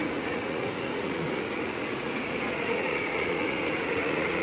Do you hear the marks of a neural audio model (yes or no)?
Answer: yes